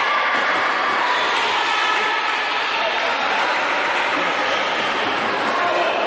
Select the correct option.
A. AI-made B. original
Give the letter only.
B